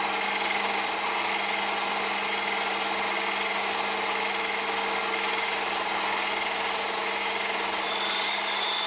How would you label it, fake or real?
real